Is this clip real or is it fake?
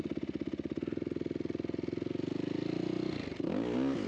real